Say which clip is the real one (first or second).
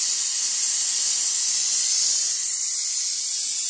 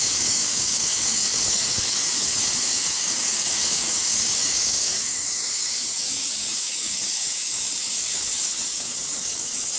first